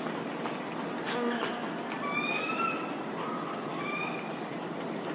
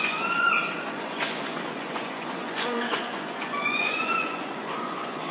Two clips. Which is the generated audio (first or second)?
second